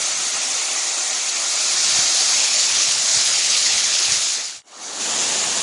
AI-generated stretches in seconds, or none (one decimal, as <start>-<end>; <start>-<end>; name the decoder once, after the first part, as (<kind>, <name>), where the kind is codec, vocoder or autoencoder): 2.4-5.0 (codec, HILCodec)